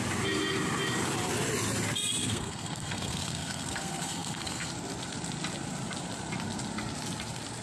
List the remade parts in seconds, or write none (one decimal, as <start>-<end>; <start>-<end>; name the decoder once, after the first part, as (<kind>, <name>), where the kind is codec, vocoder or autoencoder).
2.2-4.7 (codec, SNAC)